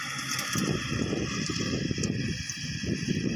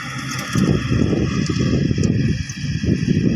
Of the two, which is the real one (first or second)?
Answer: second